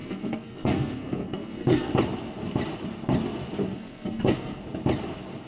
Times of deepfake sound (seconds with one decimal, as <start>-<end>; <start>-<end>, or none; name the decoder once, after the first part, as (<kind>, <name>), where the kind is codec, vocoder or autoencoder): 0.0-1.9 (codec, SNAC); 3.7-4.6